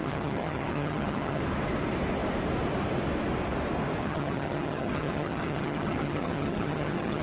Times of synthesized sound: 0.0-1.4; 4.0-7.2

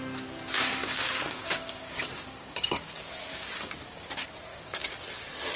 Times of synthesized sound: 0.8-2.9; 3.3-4.1; 4.5-5.0

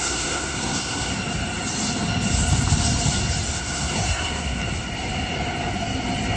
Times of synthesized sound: 0.0-1.1; 3.6-4.6

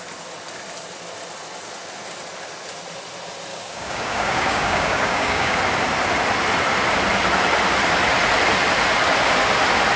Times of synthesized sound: 3.5-5.6

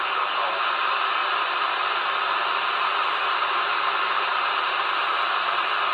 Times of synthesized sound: 1.2-2.4; 4.3-4.8